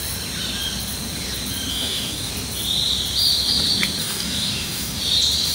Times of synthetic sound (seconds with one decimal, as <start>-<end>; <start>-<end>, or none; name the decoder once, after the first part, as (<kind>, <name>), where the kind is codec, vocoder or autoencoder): 1.7-2.3 (codec, DAC); 4.0-5.0